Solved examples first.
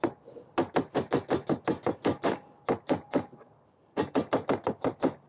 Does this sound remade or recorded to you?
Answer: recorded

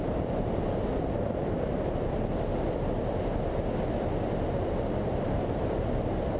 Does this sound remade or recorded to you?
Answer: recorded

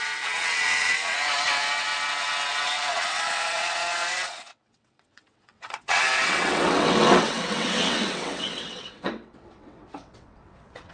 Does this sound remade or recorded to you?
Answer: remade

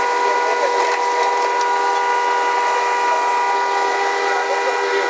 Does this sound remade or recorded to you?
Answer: recorded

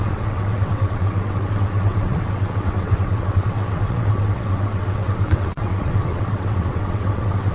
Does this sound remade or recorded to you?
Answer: remade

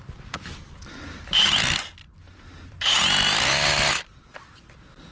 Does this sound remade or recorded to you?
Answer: recorded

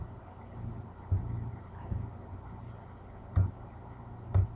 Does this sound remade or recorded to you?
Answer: recorded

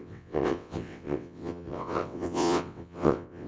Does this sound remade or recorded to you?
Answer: remade